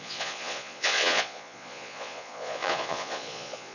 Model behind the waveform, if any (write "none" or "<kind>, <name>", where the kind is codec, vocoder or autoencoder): vocoder, Vocos